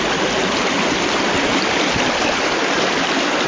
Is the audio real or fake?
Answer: real